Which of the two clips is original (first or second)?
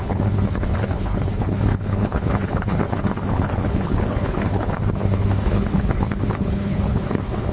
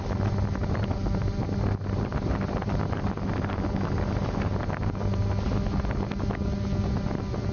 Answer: second